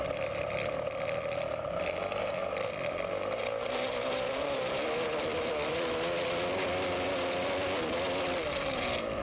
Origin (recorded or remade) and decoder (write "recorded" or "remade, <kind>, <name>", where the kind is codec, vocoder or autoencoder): remade, vocoder, BigVGAN v2